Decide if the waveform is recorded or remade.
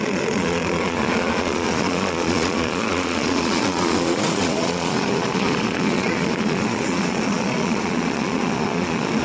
remade